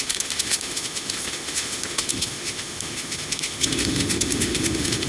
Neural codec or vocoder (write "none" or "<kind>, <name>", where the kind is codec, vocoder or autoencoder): autoencoder, DAC-VAE